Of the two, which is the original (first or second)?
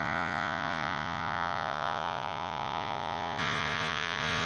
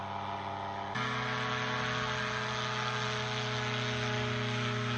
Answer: second